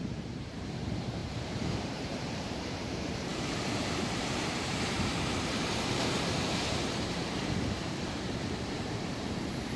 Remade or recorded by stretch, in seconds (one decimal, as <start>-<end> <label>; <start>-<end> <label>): 0.0-9.8 remade